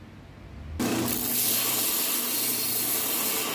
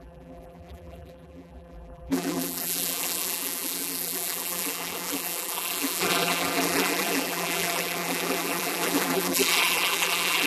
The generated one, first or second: second